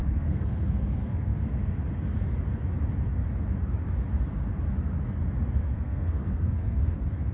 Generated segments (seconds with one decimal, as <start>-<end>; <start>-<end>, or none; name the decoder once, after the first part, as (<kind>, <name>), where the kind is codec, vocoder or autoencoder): 0.0-1.7 (codec, SNAC); 5.6-6.8